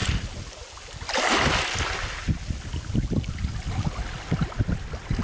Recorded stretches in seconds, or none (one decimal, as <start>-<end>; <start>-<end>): 0.0-5.2